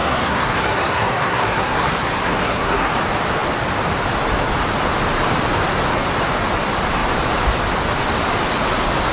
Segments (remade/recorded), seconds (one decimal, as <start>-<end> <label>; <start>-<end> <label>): 0.0-2.9 remade; 2.9-9.1 recorded